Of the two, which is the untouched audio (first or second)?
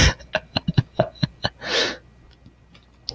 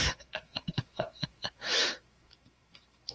first